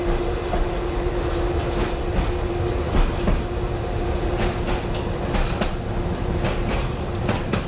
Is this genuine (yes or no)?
yes